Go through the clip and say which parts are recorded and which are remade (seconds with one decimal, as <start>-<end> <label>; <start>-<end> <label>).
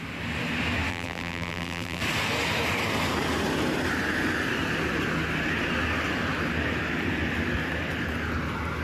0.0-0.9 recorded; 0.9-2.0 remade; 2.0-8.8 recorded